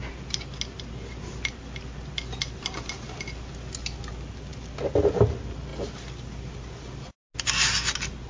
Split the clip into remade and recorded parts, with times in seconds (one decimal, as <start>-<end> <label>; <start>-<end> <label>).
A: 0.0-8.3 recorded